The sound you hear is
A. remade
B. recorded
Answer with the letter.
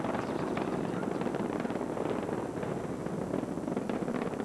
A